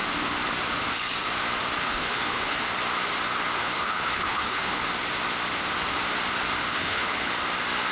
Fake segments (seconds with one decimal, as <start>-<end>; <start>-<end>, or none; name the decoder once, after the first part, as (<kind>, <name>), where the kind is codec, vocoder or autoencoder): 1.8-2.7 (codec, HILCodec); 3.6-4.8; 6.7-7.3